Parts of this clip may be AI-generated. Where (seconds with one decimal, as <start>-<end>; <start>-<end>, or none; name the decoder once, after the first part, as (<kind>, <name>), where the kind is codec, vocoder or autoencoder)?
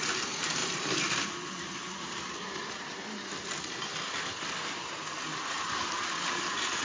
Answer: none